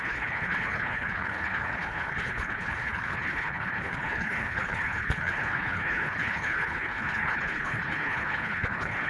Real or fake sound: fake